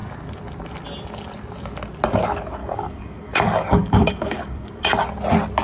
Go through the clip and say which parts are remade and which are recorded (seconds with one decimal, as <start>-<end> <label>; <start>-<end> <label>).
0.0-2.6 recorded; 2.6-4.9 remade; 4.9-5.6 recorded